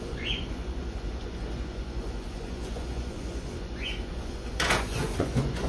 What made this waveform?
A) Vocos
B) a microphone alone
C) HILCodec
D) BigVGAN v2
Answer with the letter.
A